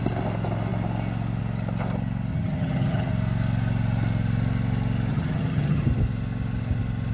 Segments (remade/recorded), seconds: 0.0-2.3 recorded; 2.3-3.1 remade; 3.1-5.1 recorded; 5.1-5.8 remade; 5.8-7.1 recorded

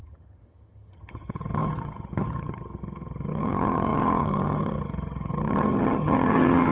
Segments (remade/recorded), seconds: 0.0-6.7 remade